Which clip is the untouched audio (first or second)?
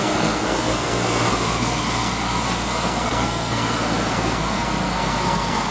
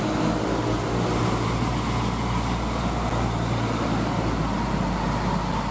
second